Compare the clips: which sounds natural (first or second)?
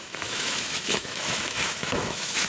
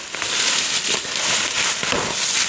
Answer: second